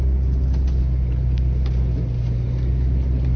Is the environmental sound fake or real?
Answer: real